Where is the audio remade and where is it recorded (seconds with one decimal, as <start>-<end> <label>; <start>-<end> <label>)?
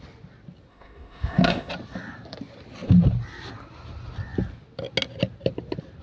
0.0-0.7 recorded; 0.7-1.7 remade; 1.7-6.0 recorded